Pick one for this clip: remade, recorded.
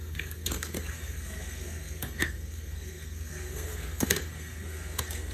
remade